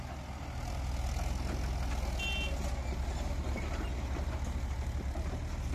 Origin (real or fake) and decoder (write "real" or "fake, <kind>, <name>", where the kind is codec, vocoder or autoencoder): real